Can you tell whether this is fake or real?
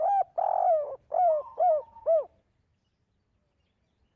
real